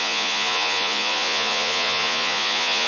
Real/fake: fake